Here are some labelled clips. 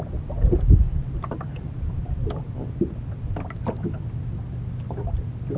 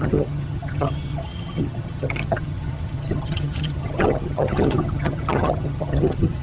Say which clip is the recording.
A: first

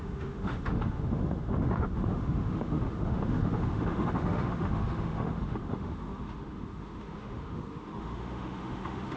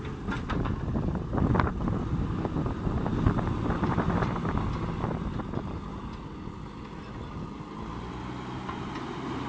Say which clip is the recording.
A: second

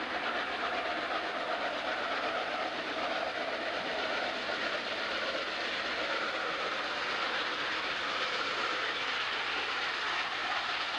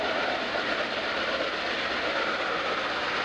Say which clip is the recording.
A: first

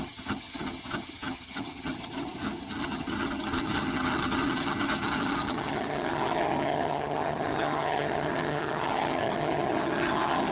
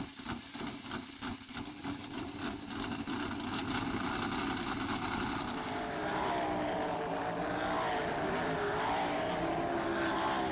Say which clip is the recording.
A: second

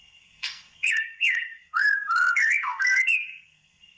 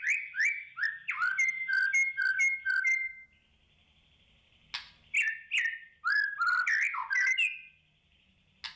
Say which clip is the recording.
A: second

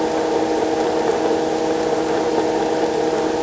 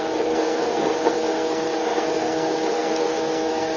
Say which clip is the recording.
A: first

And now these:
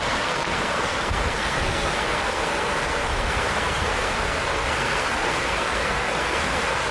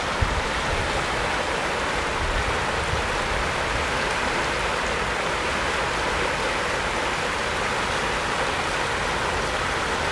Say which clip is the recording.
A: second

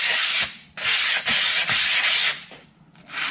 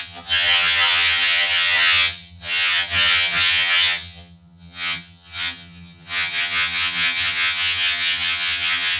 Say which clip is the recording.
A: first